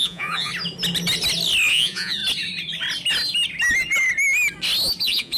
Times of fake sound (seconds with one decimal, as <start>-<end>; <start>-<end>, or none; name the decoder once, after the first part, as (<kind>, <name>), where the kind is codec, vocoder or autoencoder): 0.0-0.5 (vocoder, Vocos); 1.7-2.2; 5.0-5.4